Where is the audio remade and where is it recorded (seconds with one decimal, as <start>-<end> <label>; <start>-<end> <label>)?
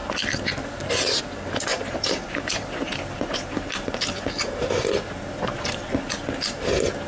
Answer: 0.0-1.7 recorded; 1.7-6.0 remade; 6.0-7.1 recorded